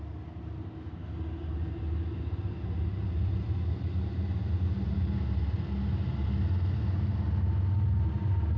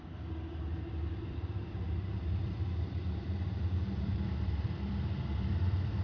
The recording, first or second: first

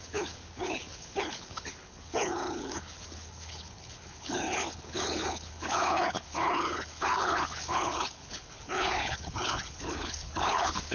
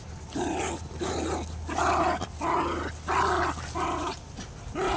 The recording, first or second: second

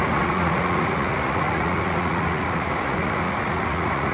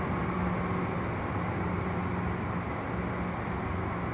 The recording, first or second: second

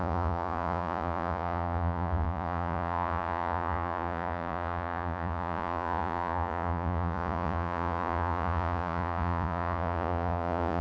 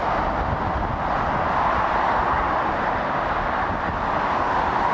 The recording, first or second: second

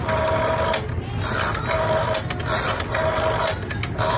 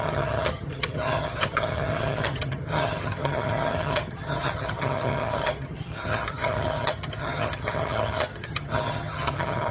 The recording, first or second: first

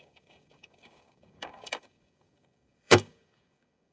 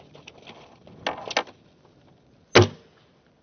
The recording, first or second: second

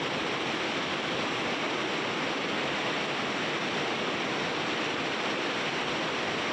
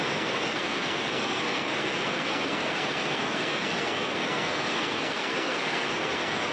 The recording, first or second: first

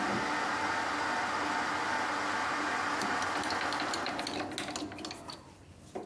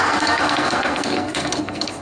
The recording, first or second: first